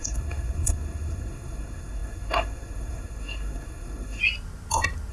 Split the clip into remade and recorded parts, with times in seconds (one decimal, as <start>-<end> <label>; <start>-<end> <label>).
0.0-4.2 remade; 4.2-5.1 recorded